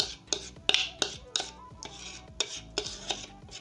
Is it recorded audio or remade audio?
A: recorded